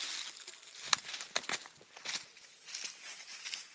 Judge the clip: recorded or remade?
recorded